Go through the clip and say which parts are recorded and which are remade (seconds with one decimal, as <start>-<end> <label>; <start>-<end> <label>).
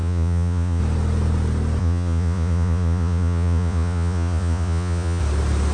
0.0-0.8 remade; 0.8-1.8 recorded; 1.8-5.2 remade; 5.2-5.7 recorded